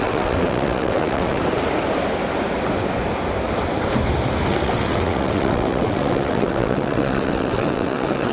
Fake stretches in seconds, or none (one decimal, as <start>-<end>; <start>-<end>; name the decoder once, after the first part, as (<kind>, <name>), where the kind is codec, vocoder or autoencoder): 0.0-1.4 (vocoder, WaveNeXt); 4.5-8.3